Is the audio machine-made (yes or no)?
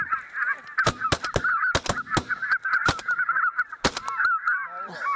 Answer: no